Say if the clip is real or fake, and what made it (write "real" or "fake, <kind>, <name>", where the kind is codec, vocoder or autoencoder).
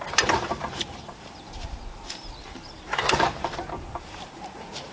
fake, vocoder, BigVGAN v2